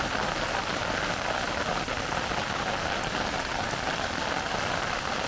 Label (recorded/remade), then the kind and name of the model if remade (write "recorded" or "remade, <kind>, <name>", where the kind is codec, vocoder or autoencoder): recorded